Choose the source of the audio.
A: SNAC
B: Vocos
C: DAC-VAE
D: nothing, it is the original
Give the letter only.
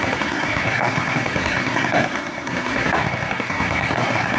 A